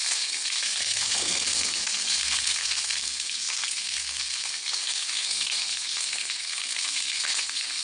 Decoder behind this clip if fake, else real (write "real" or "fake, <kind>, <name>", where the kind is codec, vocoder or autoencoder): fake, codec, SNAC